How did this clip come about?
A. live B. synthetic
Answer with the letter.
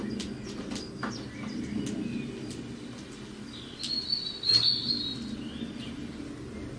A